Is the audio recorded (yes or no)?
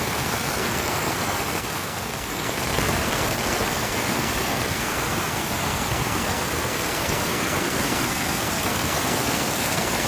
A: no